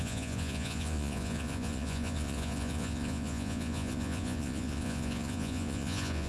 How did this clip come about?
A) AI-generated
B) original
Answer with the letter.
A